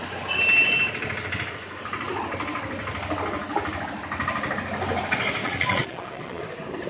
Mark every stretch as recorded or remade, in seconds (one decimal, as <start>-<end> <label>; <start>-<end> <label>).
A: 0.0-5.4 recorded; 5.4-6.4 remade; 6.4-6.9 recorded